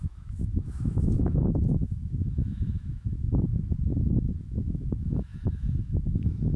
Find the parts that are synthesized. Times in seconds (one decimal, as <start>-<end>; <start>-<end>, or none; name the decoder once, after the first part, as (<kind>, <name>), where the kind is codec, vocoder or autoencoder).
0.0-3.5 (autoencoder, DAC-VAE); 4.4-6.6